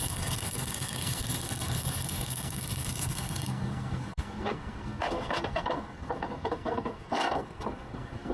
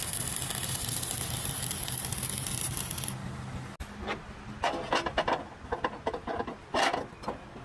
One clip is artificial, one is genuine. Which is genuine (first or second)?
second